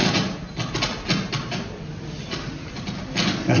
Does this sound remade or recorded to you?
recorded